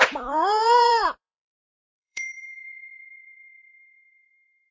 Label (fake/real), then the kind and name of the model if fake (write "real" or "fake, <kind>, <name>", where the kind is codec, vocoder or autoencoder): fake, vocoder, Vocos